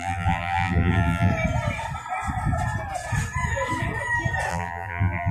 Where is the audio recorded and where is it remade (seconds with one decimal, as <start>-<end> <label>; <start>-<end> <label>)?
0.0-1.3 remade; 1.3-4.5 recorded; 4.5-5.3 remade